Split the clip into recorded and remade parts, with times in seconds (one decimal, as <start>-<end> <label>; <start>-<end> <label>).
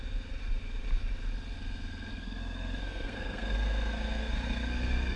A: 0.0-2.1 recorded; 2.1-5.2 remade